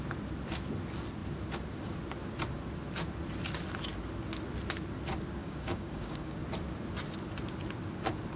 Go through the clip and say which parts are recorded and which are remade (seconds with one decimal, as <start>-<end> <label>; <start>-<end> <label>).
0.0-5.4 recorded; 5.4-6.4 remade; 6.4-8.4 recorded